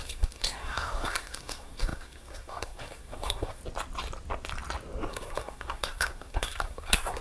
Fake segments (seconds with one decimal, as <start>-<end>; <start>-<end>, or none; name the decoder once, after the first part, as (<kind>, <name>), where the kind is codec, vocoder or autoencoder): 0.0-3.6 (codec, SNAC); 5.1-7.2